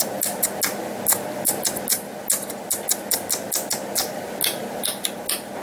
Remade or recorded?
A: recorded